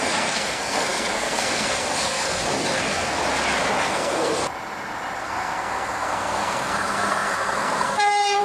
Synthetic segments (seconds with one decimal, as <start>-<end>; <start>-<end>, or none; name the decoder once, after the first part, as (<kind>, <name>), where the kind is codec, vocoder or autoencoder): 0.0-3.2 (codec, SNAC); 3.8-4.4; 5.2-8.4